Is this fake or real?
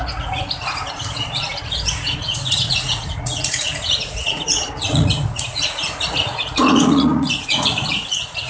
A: fake